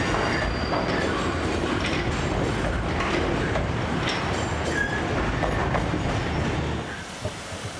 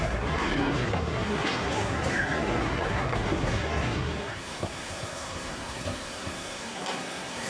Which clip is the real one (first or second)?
first